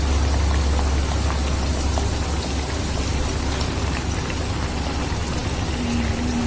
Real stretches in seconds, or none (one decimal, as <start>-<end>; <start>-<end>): 0.0-6.5